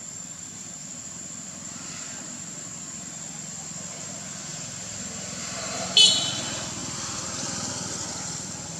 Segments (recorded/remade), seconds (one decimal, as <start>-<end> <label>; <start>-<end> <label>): 0.0-0.9 remade; 0.9-4.5 recorded; 4.5-6.3 remade; 6.3-8.8 recorded